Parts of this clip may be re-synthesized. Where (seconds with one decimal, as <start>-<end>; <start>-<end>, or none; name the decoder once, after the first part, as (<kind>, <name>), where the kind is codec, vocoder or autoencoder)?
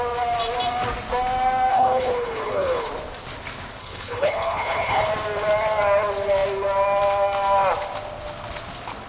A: 1.7-2.9 (codec, HILCodec); 3.8-5.1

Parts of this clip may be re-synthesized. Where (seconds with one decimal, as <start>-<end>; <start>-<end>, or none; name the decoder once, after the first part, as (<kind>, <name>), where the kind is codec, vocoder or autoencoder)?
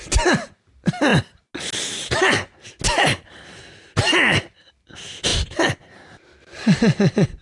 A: none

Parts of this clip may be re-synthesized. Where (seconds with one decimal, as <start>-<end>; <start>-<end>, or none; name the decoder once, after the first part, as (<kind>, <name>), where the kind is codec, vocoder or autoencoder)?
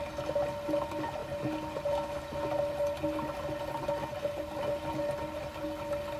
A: none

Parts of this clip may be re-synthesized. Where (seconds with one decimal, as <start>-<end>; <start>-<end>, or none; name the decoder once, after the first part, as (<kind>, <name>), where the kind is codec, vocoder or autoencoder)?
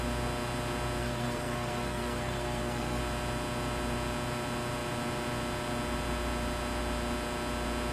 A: 1.0-3.0 (codec, SNAC)